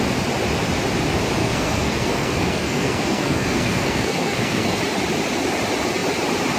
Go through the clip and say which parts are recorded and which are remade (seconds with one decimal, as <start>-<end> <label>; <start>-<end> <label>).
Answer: 0.0-1.4 recorded; 1.4-4.8 remade; 4.8-6.6 recorded